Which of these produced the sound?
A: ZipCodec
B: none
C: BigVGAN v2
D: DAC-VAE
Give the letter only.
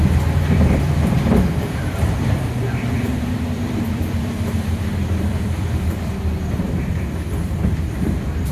C